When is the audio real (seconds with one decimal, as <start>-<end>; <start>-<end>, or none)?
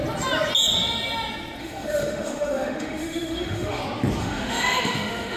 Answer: 0.0-1.6; 3.8-4.2